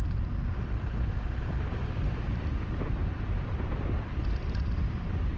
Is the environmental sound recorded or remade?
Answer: recorded